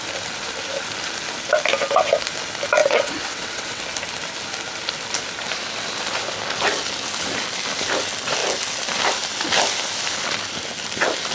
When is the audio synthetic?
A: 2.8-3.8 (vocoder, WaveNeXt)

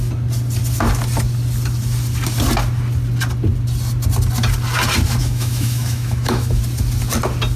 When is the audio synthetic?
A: 5.2-6.6 (autoencoder, DAC-VAE)

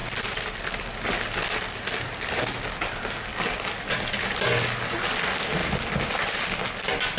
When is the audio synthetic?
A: 5.6-6.3 (vocoder, BigVGAN v2)

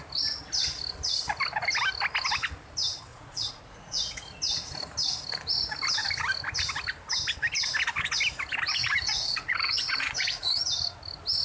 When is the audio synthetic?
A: 3.1-4.2 (vocoder, Vocos); 8.8-10.6

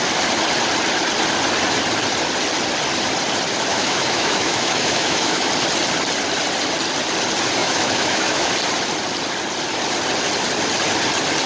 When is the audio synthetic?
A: 3.7-5.5 (autoencoder, DAC-VAE); 7.6-8.5

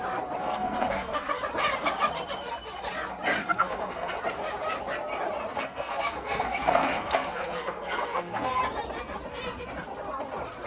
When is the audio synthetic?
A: 0.4-1.3 (codec, SNAC); 3.4-4.1; 5.5-8.6

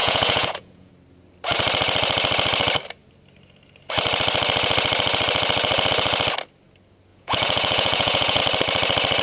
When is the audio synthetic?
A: 0.0-0.9 (vocoder, Vocos); 7.1-8.4

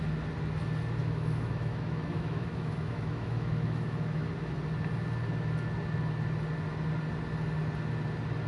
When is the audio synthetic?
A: 1.0-4.3 (autoencoder, DAC-VAE)